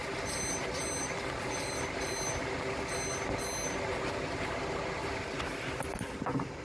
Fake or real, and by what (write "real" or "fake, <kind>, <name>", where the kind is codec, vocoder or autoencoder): real